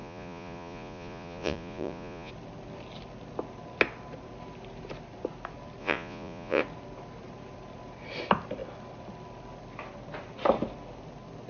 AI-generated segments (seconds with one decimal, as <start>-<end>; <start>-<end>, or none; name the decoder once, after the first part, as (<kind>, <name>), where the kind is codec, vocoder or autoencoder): 0.0-2.3 (vocoder, Vocos); 5.8-6.6